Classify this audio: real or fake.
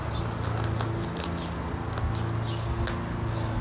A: real